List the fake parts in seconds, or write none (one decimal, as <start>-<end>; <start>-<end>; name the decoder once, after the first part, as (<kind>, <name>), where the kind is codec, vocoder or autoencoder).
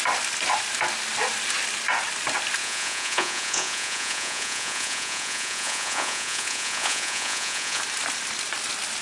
2.6-7.8 (vocoder, Vocos)